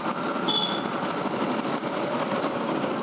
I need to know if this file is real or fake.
real